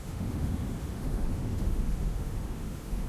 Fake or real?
fake